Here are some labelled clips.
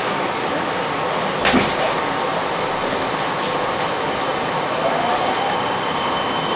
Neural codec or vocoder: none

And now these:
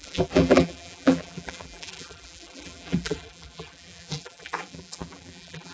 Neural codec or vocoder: vocoder, BigVGAN v2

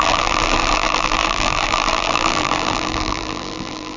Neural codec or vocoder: vocoder, BigVGAN v2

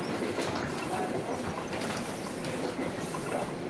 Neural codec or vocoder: none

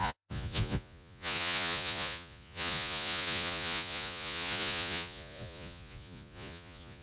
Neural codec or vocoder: vocoder, Vocos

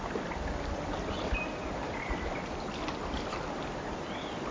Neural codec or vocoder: none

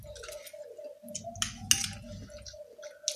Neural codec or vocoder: none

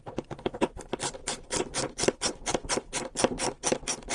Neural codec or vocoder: none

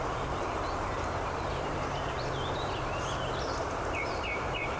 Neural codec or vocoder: vocoder, BigVGAN v2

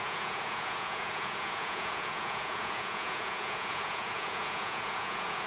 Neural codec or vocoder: vocoder, Vocos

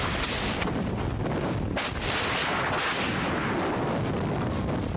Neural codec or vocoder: none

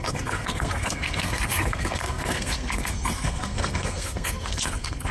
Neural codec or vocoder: codec, SNAC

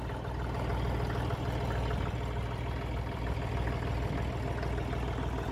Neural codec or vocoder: none